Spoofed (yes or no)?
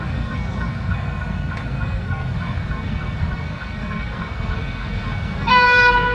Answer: yes